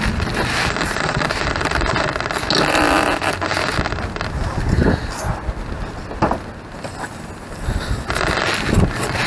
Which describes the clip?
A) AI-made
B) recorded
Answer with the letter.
B